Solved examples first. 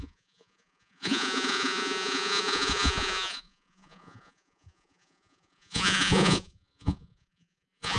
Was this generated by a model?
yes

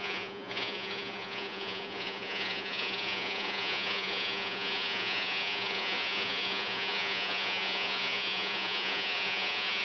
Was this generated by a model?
yes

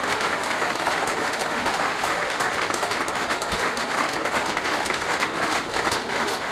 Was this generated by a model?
yes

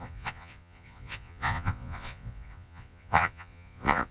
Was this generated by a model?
yes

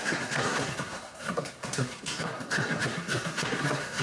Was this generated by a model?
yes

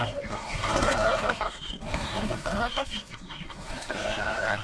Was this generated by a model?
yes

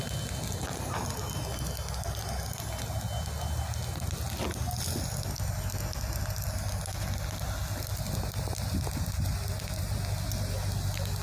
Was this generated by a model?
no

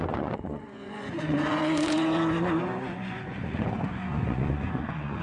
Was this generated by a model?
yes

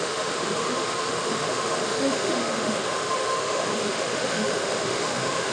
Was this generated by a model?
yes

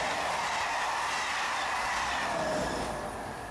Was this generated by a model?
no